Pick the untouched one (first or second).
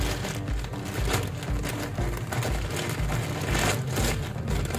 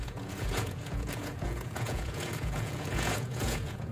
first